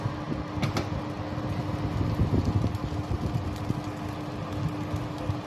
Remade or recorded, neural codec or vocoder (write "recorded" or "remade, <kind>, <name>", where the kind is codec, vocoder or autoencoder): recorded